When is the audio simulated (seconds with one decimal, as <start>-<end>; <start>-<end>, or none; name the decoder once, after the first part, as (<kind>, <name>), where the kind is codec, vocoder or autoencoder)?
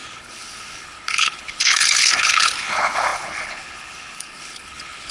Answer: 0.0-5.1 (codec, HILCodec)